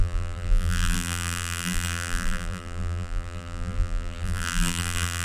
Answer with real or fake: fake